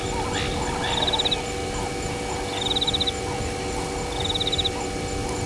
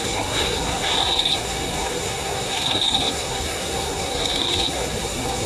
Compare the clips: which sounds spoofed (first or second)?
second